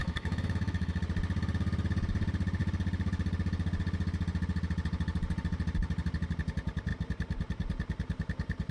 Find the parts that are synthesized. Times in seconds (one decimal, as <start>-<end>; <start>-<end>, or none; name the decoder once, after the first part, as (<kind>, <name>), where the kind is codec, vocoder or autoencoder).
0.0-1.0 (autoencoder, DAC-VAE)